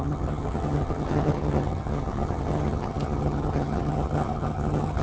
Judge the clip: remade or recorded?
remade